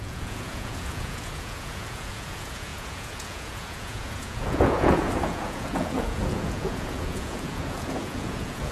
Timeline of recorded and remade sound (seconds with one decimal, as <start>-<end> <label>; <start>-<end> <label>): 0.0-8.7 remade